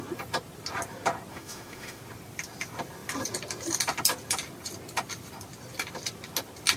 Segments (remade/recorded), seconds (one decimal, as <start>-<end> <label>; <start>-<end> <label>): 0.0-1.3 recorded; 1.3-2.0 remade; 2.0-6.8 recorded